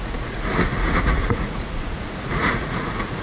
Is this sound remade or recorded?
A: remade